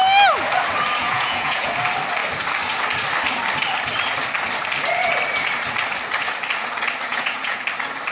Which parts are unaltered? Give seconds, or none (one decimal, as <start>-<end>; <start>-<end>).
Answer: 0.0-1.0; 1.7-7.1; 7.6-8.1